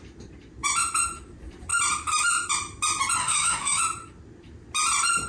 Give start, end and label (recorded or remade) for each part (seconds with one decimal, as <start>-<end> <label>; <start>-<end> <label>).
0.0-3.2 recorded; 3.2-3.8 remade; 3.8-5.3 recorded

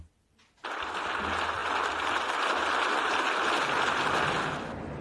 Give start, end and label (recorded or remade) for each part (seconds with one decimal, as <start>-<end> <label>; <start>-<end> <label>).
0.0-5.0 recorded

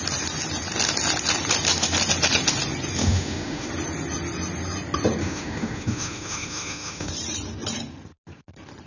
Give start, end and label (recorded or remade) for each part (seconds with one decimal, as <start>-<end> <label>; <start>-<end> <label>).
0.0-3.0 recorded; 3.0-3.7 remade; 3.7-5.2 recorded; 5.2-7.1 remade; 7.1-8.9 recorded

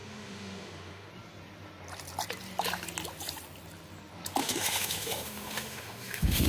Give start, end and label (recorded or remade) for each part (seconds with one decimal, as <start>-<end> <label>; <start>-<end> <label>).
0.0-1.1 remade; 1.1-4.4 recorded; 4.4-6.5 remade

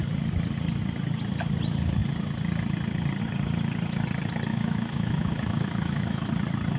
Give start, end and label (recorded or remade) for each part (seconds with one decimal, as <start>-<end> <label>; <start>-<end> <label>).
0.0-4.5 recorded; 4.5-6.2 remade; 6.2-6.8 recorded

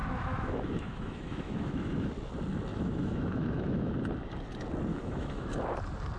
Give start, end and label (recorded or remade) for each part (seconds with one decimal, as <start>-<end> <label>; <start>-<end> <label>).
0.0-2.1 remade; 2.1-2.7 recorded; 2.7-3.9 remade; 3.9-4.9 recorded; 4.9-5.5 remade; 5.5-6.2 recorded